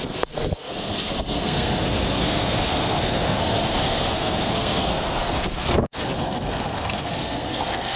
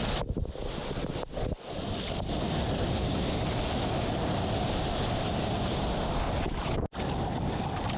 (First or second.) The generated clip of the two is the first